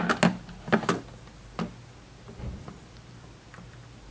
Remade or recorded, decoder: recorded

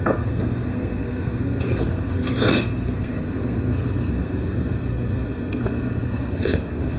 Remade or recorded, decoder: remade, codec, SNAC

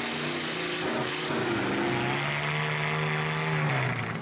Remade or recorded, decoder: recorded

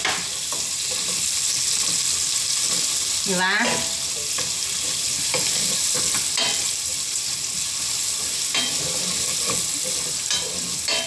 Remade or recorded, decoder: recorded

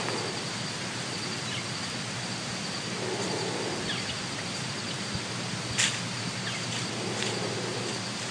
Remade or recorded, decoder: recorded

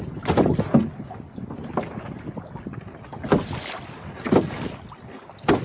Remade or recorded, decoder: recorded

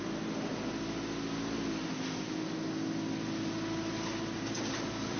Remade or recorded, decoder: recorded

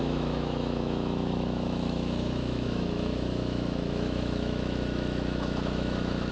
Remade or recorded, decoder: remade, autoencoder, DAC-VAE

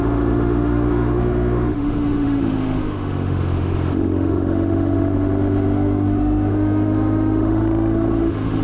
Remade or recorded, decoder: remade, autoencoder, DAC-VAE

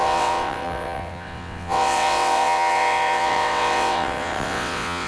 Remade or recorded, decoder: remade, vocoder, WaveNeXt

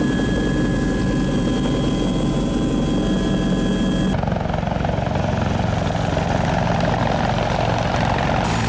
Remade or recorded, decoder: recorded